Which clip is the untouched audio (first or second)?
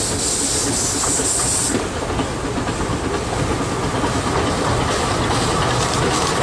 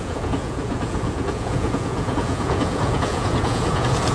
first